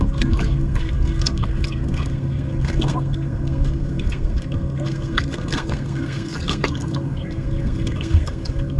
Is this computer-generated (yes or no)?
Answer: yes